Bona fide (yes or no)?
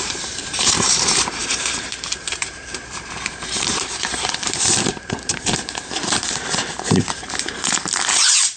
no